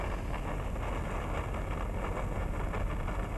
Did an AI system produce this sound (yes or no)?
no